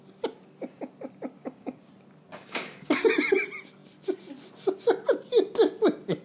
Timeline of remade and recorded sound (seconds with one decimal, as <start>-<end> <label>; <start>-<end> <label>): 0.0-1.4 recorded; 1.4-1.9 remade; 1.9-2.3 recorded; 2.3-3.1 remade; 3.1-6.2 recorded